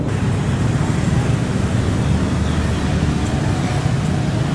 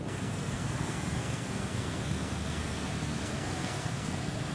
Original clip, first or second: first